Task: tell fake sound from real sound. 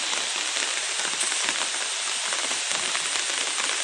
real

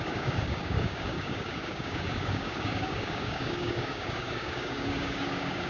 fake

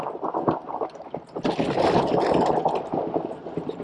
real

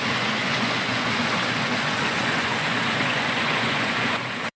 fake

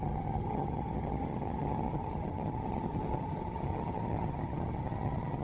fake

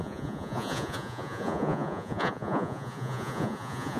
fake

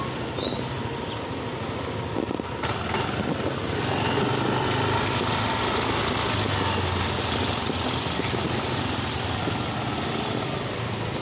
real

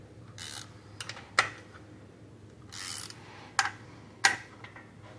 real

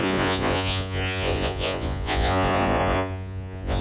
fake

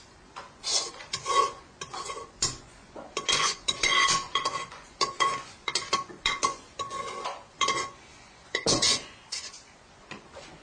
fake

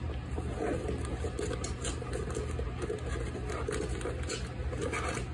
real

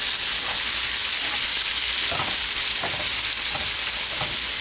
real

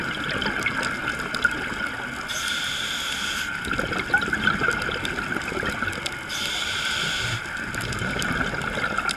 real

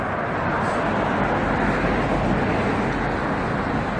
real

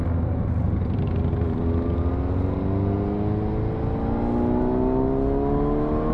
real